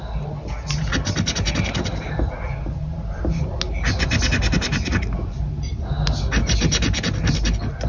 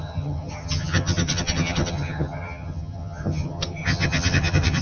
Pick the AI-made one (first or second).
second